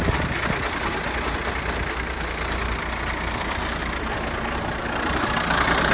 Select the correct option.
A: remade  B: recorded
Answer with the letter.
B